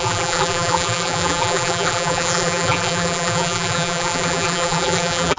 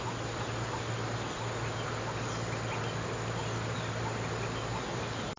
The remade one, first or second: first